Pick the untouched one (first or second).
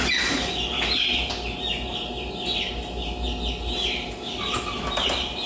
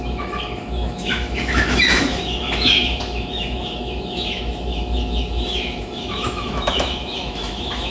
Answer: first